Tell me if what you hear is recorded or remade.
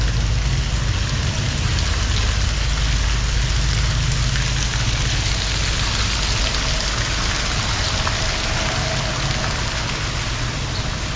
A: recorded